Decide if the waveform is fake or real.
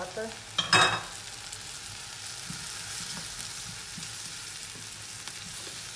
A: real